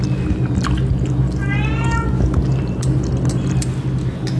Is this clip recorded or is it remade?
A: recorded